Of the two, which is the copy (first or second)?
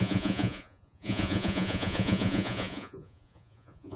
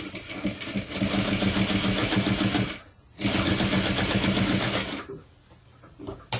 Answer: first